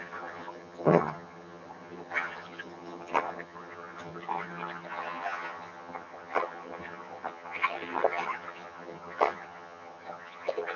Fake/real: fake